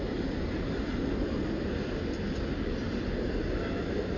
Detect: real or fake real